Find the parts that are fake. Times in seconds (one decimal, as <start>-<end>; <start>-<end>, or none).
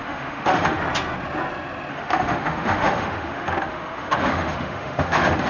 0.0-0.8; 1.9-5.5